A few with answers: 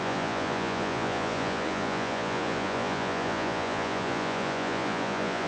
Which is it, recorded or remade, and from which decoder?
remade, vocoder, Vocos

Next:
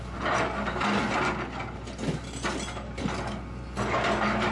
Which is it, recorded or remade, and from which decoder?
recorded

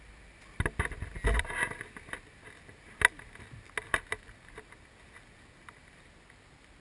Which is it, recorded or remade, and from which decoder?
recorded